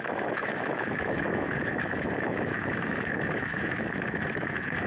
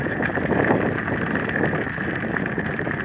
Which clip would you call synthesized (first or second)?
first